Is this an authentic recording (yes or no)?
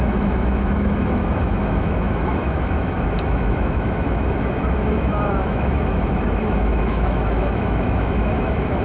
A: no